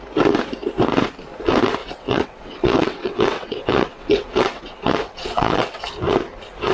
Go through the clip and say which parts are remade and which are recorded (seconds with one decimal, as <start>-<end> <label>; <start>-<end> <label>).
0.0-1.8 recorded; 1.8-5.8 remade; 5.8-6.7 recorded